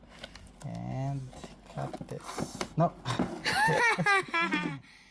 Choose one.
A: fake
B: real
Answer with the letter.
B